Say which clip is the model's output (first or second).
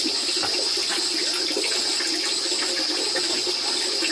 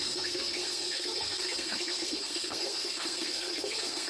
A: second